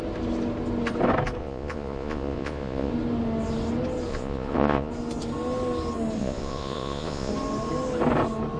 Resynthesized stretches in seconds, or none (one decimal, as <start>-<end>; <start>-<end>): 1.4-2.9; 4.1-4.9; 6.2-7.3

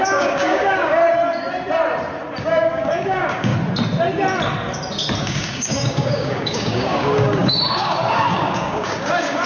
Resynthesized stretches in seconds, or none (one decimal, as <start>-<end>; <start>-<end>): 0.0-1.0; 2.4-3.5; 5.2-9.5

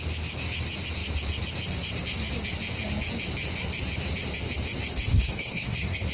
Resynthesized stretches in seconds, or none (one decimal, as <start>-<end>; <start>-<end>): 5.1-6.1

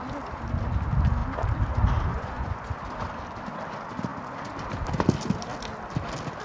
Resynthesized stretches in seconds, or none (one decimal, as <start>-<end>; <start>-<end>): 2.1-2.7

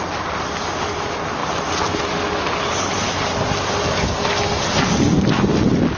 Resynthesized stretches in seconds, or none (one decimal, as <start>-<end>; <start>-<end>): none